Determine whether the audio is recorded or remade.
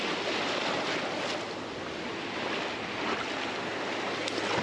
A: recorded